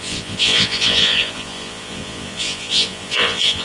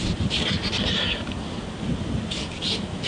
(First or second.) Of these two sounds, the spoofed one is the first